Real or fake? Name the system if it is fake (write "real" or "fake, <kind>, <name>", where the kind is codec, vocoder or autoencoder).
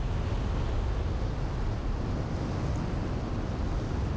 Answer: real